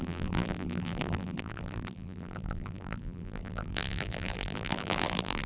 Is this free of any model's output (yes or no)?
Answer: no